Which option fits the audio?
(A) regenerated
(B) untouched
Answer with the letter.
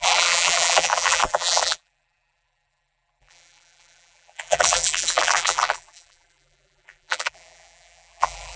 A